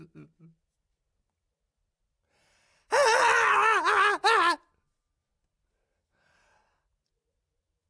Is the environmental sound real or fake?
real